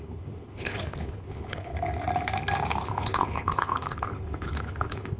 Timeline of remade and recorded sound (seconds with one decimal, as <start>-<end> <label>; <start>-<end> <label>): 0.0-1.7 remade; 1.7-2.8 recorded; 2.8-5.2 remade